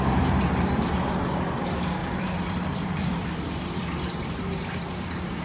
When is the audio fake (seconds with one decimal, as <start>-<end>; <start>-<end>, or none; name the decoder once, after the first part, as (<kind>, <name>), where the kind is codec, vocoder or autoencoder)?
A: 2.0-5.4 (vocoder, BigVGAN v2)